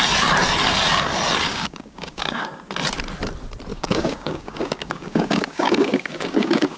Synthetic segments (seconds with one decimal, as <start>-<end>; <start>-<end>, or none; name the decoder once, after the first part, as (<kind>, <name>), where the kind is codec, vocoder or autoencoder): 1.5-2.4 (codec, DAC); 3.7-6.8